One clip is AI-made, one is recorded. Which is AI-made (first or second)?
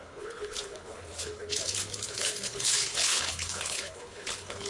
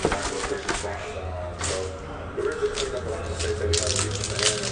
first